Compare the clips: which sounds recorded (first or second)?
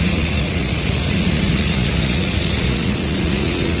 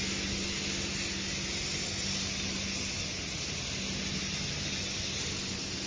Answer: second